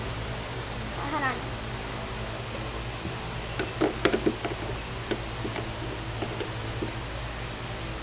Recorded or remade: recorded